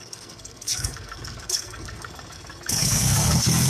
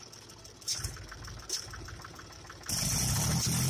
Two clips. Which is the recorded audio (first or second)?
second